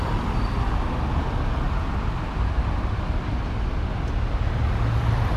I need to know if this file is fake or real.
real